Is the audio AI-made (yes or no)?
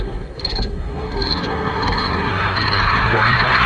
yes